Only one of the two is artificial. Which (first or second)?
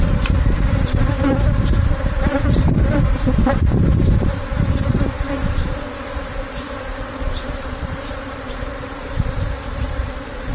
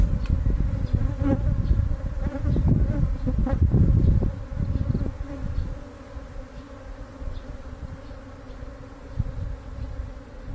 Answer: first